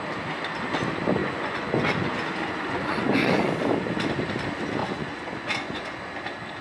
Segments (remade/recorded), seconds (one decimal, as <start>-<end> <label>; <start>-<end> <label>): 0.0-1.2 recorded; 1.2-3.5 remade; 3.5-4.8 recorded; 4.8-6.1 remade; 6.1-6.6 recorded